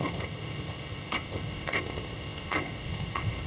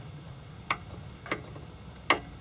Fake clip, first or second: first